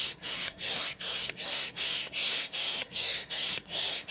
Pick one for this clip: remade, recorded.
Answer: remade